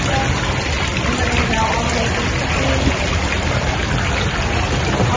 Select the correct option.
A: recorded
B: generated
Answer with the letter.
A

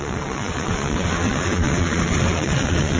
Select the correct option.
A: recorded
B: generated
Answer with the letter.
B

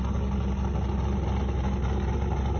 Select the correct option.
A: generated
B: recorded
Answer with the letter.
B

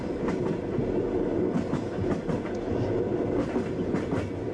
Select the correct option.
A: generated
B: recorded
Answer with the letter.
B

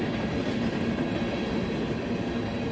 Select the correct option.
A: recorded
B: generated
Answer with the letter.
A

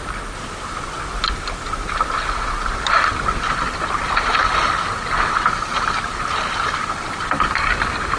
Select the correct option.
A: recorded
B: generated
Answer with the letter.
A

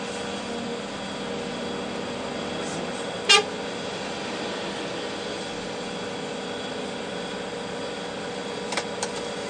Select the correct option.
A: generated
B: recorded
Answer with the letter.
B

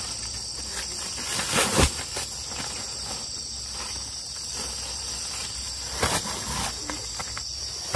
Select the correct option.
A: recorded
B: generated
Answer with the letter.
A